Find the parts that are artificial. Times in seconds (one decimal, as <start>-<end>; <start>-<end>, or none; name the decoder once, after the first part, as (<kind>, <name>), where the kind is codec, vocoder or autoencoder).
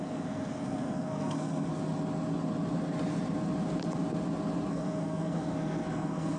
0.0-1.7 (codec, SNAC); 4.7-6.4